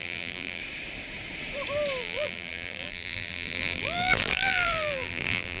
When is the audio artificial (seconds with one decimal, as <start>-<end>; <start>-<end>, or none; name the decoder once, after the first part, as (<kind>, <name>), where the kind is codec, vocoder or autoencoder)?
0.0-0.6 (vocoder, BigVGAN v2); 2.0-5.6